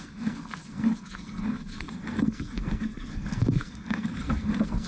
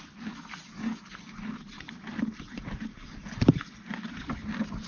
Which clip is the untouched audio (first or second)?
second